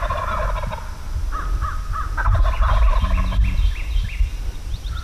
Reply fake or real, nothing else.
real